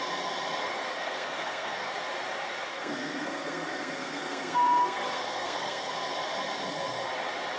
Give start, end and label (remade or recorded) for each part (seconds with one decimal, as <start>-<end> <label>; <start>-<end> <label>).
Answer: 0.0-0.9 recorded; 0.9-1.9 remade; 1.9-2.7 recorded; 2.7-5.9 remade; 5.9-7.6 recorded

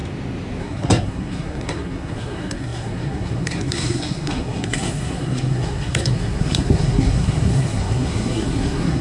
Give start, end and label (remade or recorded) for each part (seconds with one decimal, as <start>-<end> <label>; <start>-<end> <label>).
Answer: 0.0-0.6 recorded; 0.6-9.0 remade

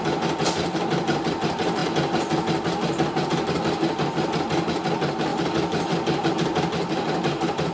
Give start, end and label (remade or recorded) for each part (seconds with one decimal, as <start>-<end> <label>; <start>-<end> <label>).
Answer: 0.0-7.7 recorded

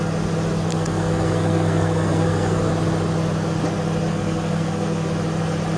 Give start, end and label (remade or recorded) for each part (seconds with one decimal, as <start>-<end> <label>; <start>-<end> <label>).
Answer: 0.0-0.7 recorded; 0.7-2.7 remade; 2.7-4.1 recorded; 4.1-5.1 remade; 5.1-5.8 recorded

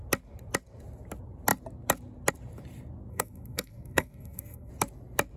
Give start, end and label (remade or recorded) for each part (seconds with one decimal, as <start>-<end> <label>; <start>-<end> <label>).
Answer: 0.0-3.1 recorded; 3.1-4.7 remade; 4.7-5.4 recorded

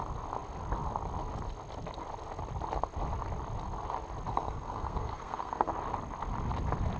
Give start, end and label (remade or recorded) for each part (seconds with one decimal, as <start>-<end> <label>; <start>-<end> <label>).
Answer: 0.0-4.3 recorded; 4.3-5.7 remade; 5.7-7.0 recorded